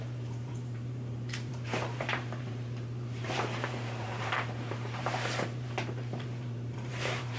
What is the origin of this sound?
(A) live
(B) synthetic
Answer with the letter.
B